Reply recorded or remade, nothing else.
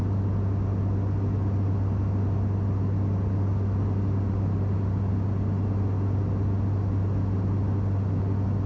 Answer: recorded